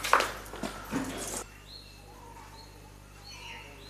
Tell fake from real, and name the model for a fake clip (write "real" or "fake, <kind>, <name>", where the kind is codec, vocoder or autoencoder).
real